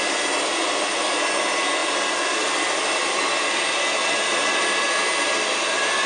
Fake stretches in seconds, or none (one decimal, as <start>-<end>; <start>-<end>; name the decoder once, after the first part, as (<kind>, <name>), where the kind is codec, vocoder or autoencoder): none